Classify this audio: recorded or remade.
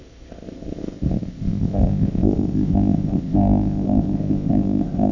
remade